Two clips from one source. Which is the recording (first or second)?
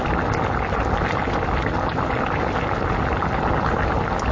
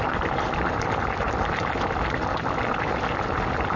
first